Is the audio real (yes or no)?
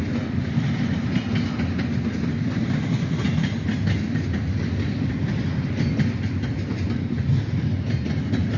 yes